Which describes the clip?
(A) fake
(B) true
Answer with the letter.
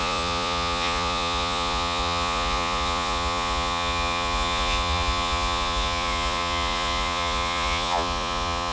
A